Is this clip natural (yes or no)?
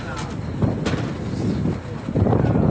yes